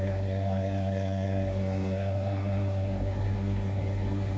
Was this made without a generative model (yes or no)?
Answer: no